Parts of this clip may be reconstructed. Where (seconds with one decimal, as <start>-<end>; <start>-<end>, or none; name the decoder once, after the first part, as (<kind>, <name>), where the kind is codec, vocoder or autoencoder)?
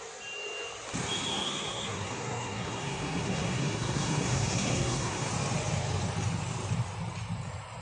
1.3-5.3 (codec, SNAC)